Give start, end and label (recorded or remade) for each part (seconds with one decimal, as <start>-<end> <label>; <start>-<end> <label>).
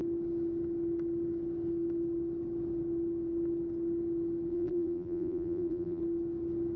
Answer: 0.0-4.5 recorded; 4.5-6.0 remade; 6.0-6.8 recorded